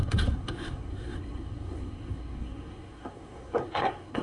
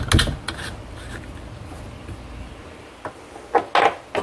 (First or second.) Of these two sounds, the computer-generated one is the first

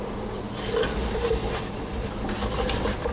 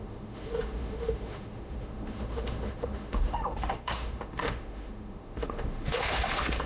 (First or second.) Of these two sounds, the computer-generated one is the second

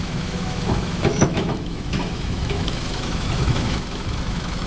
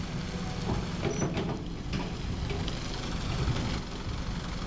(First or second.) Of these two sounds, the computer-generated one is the first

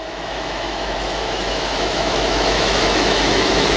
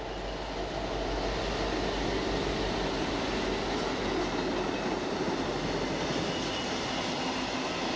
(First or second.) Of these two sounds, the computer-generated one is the first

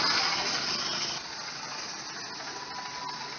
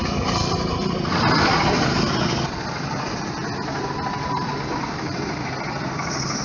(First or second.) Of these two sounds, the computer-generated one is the second